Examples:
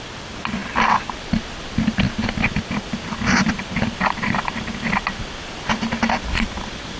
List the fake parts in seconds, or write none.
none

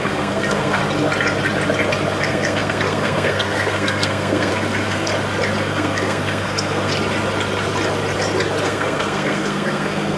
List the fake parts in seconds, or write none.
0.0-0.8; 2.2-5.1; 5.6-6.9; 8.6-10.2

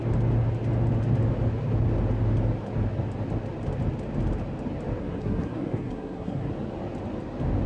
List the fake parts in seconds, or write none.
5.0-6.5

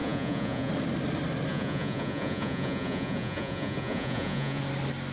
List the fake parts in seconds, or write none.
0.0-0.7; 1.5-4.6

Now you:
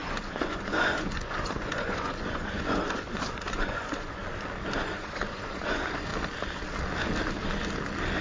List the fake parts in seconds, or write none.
0.0-4.2; 4.8-6.1